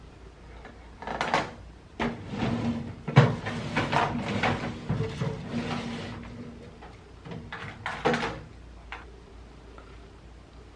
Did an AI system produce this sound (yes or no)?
no